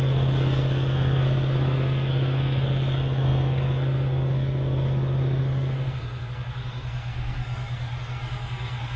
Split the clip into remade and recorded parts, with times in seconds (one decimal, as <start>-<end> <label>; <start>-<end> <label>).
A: 0.0-9.0 remade